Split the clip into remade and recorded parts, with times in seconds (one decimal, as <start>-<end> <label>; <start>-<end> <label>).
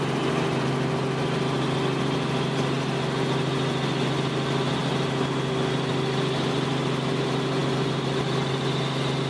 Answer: 0.0-9.3 recorded